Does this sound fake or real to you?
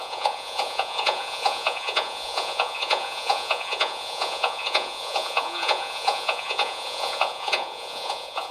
fake